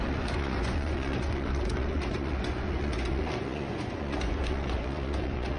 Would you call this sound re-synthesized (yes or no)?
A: yes